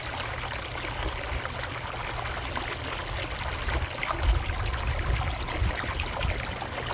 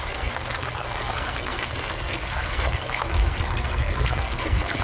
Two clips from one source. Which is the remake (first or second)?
second